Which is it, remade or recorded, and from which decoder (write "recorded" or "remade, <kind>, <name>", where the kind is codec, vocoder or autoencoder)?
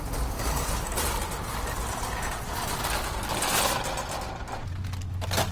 recorded